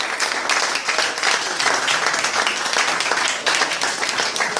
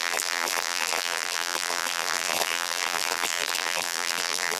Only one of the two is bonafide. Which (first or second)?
first